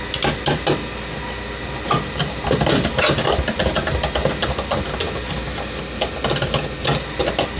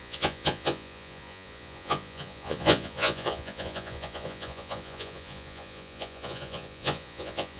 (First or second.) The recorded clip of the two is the first